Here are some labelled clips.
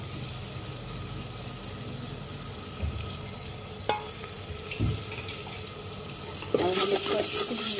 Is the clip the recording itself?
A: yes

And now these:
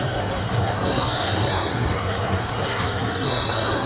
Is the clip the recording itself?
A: no